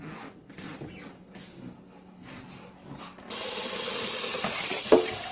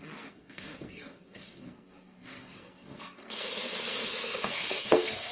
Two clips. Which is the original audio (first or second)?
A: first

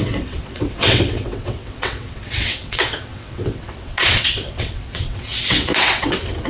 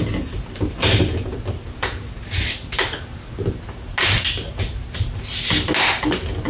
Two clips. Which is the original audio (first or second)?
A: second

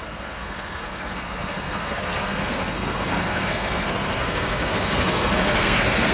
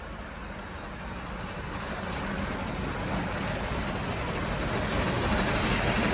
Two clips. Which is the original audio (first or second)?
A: second